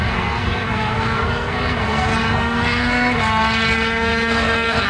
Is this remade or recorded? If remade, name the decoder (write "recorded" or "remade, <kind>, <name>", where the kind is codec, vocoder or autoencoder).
remade, codec, SNAC